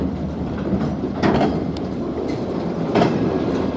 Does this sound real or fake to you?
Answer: fake